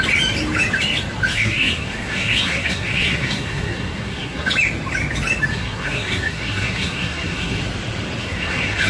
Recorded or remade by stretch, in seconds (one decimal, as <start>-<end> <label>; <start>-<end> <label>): 0.0-1.3 recorded; 1.3-4.5 remade; 4.5-5.5 recorded; 5.5-7.6 remade; 7.6-8.2 recorded; 8.2-8.9 remade